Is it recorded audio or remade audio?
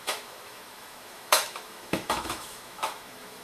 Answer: remade